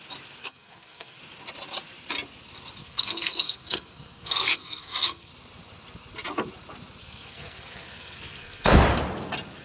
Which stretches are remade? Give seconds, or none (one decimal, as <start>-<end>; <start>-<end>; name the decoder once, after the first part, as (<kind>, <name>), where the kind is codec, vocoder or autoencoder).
0.4-1.2 (codec, SNAC); 2.8-5.3; 7.0-8.8